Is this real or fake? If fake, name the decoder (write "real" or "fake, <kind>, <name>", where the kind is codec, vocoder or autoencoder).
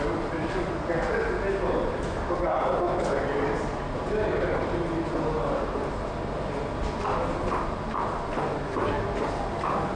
real